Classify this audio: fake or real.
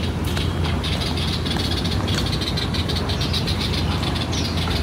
real